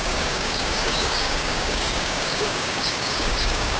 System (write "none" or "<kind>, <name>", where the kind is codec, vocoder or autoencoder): codec, DAC